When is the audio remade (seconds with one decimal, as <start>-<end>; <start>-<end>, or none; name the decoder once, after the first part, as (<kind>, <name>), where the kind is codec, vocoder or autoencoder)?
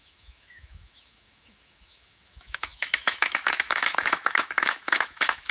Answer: 0.0-5.5 (autoencoder, DAC-VAE)